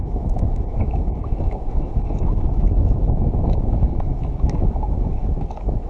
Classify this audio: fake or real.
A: fake